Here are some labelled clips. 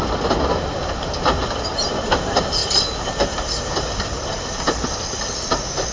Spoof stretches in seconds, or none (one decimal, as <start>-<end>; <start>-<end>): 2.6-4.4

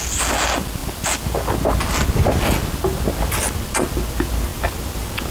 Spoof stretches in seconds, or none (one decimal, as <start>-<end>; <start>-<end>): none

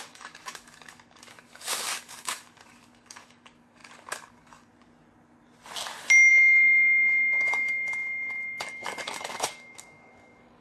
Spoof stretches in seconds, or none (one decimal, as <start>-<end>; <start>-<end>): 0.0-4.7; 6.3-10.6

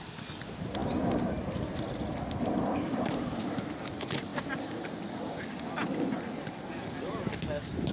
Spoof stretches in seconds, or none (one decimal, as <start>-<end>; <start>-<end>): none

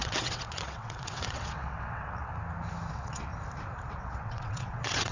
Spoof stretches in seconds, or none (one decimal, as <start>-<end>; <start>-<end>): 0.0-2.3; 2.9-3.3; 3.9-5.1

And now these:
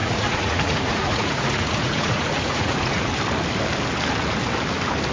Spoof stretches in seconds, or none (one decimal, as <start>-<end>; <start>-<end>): 0.0-3.1